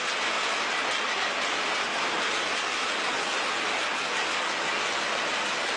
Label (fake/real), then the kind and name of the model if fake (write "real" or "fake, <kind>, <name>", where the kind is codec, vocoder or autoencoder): real